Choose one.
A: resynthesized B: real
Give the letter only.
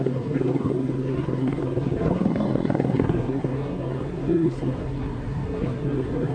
A